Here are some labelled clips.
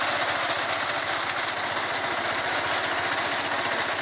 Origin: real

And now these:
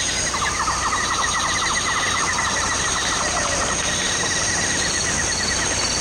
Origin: real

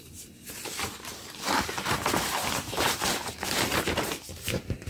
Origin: fake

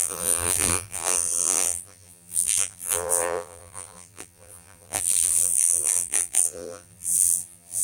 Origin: fake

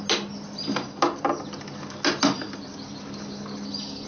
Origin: real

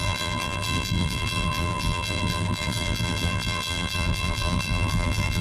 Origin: fake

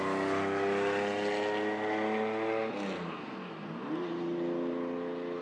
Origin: real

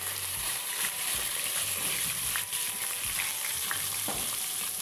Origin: fake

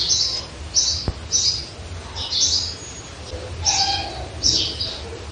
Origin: real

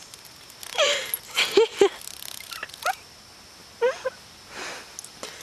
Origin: real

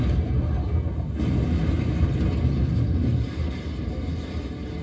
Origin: real